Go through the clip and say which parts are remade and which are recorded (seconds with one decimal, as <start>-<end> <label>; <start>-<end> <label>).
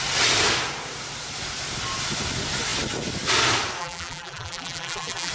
0.0-3.8 recorded; 3.8-5.3 remade